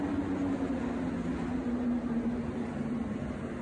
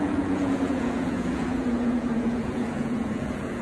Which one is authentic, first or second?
first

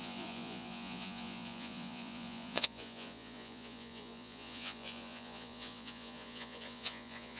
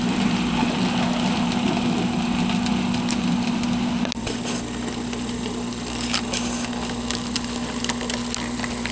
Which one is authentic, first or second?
second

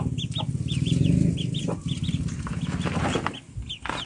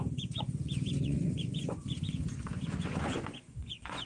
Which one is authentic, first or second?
first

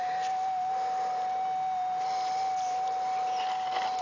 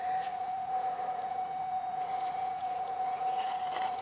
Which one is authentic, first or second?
first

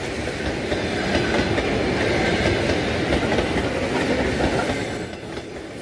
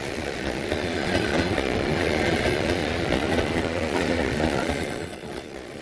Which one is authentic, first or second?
first